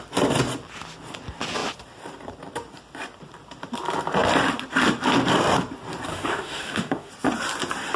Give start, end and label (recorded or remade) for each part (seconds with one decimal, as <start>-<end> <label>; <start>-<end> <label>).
0.0-6.1 recorded; 6.1-7.1 remade; 7.1-8.0 recorded